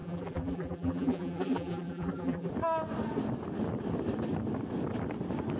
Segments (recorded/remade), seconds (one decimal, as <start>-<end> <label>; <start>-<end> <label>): 0.0-2.5 remade; 2.5-5.6 recorded